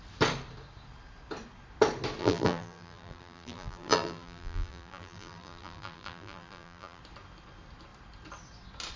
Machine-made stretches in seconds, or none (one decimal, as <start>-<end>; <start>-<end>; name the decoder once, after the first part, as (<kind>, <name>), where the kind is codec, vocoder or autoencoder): 2.2-7.0 (vocoder, BigVGAN v2)